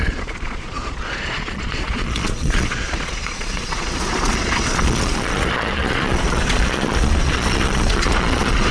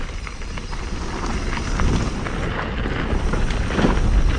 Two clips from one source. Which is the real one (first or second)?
second